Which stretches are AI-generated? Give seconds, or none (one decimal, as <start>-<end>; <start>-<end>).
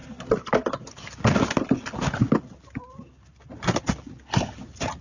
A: none